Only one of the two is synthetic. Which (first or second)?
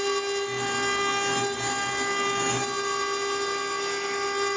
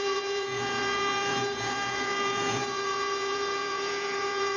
second